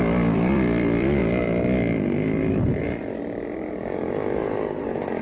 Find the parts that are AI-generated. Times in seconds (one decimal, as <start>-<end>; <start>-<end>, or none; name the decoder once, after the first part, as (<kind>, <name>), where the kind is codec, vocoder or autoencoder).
0.0-1.2 (vocoder, BigVGAN v2); 2.6-5.2